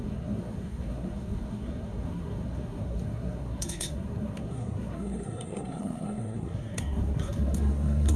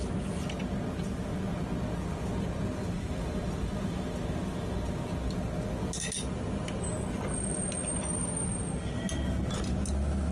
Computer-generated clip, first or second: first